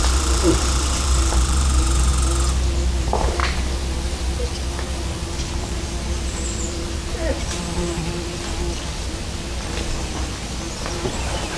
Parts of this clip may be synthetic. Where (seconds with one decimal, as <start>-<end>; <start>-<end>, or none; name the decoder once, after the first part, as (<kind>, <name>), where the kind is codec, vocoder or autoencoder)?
0.0-2.1 (vocoder, BigVGAN v2); 2.9-3.4; 5.6-8.0; 10.8-11.6